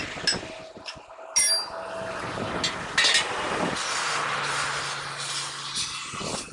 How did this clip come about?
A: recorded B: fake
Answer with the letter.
A